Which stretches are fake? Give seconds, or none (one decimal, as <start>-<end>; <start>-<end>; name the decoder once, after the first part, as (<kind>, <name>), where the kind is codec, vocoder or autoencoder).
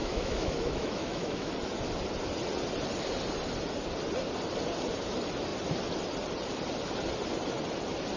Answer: 0.0-1.5 (autoencoder, DAC-VAE)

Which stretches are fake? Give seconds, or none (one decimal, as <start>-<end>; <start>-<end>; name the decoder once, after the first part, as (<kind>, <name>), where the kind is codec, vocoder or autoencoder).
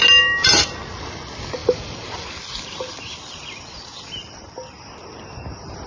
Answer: none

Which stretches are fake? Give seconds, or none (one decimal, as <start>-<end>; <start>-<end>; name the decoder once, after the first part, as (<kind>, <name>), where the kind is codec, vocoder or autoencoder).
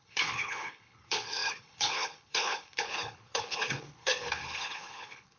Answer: 0.0-5.4 (codec, HILCodec)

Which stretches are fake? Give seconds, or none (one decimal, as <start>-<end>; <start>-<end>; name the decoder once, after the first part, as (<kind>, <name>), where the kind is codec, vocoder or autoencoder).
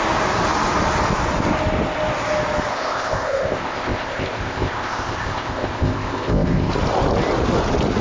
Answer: 2.7-6.7 (codec, ZipCodec)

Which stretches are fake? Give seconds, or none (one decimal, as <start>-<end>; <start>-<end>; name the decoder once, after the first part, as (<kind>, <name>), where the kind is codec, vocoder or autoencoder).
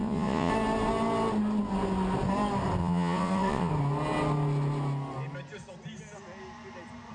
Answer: 0.0-0.5 (vocoder, Vocos); 2.8-3.7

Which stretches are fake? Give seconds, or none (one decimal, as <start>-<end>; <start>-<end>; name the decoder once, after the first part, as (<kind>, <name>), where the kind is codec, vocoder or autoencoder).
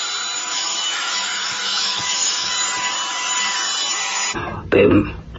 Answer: 0.4-2.5 (autoencoder, DAC-VAE)